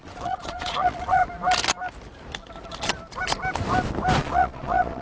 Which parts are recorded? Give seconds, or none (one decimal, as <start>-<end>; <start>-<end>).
1.2-4.2